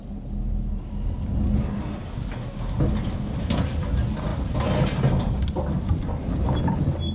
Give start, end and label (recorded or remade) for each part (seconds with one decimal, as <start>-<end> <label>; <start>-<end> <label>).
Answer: 0.0-7.1 recorded